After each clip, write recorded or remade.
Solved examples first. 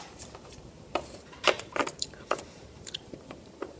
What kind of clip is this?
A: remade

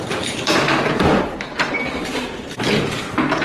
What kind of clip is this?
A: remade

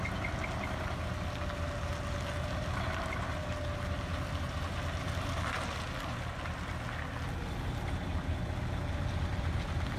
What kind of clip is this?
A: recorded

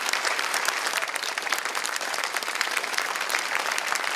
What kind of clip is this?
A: remade